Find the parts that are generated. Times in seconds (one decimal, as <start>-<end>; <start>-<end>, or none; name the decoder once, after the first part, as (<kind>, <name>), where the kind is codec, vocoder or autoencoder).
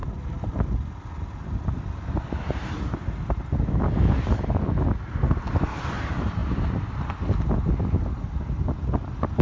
none